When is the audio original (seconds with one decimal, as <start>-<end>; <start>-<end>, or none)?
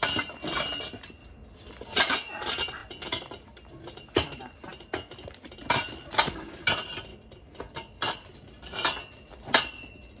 0.0-10.2